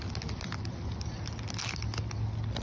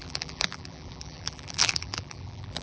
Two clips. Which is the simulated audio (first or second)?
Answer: second